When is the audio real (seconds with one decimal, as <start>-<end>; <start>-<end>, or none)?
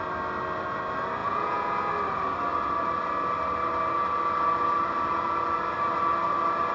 0.0-1.2; 1.9-6.7